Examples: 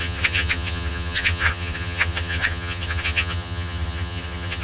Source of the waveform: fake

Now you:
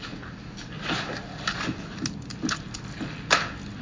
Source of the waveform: real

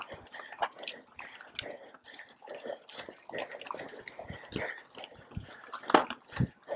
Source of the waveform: real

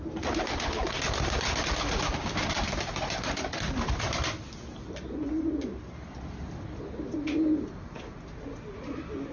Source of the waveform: real